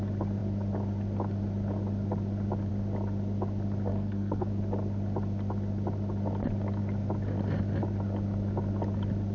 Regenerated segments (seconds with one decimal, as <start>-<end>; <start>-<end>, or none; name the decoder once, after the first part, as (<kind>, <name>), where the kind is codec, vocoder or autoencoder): 3.9-4.5 (codec, SNAC)